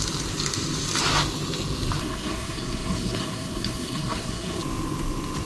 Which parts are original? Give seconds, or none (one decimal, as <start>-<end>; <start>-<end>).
0.0-2.0; 4.6-5.5